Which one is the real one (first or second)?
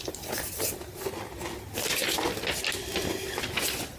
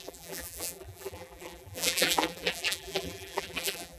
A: first